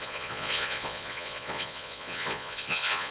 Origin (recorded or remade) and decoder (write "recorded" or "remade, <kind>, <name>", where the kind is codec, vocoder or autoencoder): remade, vocoder, Vocos